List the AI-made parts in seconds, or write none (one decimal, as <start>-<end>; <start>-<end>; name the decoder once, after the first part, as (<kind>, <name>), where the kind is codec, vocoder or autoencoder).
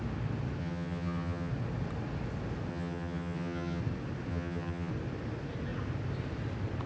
0.6-1.5 (vocoder, HiFi-GAN); 2.7-3.8; 4.3-4.9